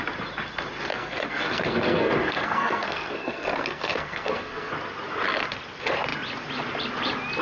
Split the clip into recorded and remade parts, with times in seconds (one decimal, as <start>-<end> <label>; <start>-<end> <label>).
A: 0.0-0.9 recorded; 0.9-4.7 remade; 4.7-7.4 recorded